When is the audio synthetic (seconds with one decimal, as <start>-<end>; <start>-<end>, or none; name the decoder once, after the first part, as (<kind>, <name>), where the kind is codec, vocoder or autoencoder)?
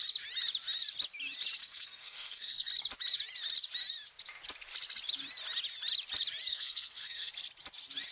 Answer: 1.6-2.7 (codec, SNAC); 6.5-7.3